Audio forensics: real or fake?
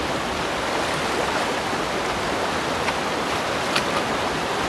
real